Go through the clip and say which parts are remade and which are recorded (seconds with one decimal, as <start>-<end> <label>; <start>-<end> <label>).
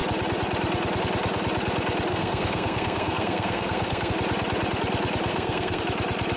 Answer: 0.0-2.1 recorded; 2.1-4.1 remade; 4.1-5.3 recorded; 5.3-5.8 remade; 5.8-6.4 recorded